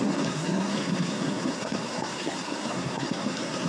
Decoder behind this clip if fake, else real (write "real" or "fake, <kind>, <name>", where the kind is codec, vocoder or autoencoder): fake, codec, SNAC